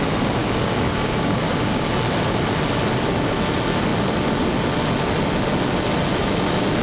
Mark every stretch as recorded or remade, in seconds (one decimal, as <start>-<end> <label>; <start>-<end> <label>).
0.0-0.4 recorded; 0.4-1.9 remade; 1.9-6.8 recorded